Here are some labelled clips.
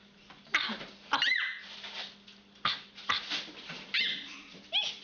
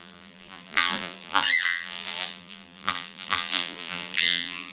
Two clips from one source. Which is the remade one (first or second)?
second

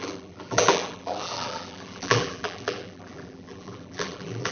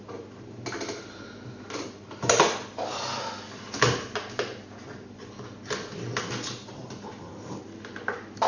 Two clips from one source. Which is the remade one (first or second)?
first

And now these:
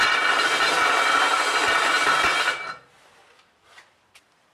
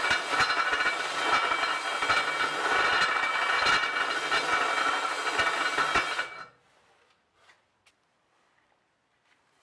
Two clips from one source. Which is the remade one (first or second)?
first